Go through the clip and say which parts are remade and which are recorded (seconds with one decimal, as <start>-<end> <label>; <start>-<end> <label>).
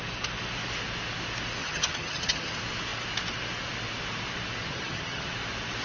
0.0-1.6 recorded; 1.6-2.5 remade; 2.5-4.6 recorded; 4.6-5.3 remade; 5.3-5.8 recorded